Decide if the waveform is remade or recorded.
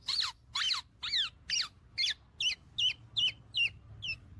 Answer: recorded